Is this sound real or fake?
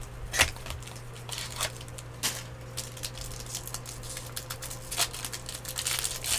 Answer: real